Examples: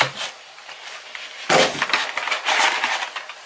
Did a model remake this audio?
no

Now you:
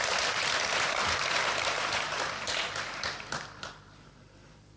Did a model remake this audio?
yes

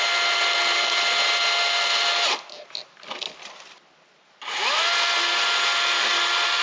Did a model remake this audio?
no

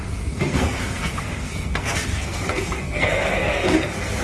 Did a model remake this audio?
yes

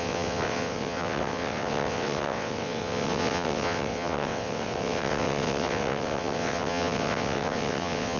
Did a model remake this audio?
yes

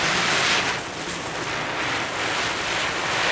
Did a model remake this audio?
no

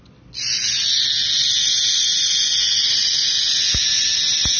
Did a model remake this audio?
no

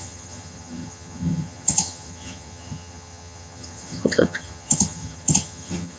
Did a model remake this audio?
yes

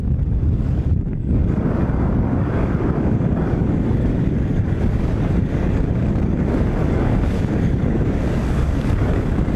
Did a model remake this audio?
yes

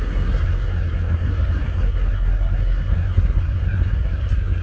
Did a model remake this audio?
yes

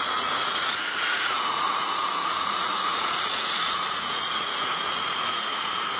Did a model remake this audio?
yes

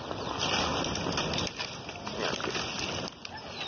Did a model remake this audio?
no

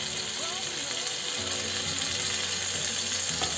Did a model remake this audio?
no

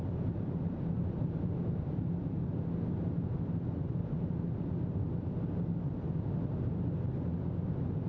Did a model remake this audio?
no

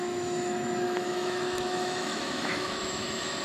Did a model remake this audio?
yes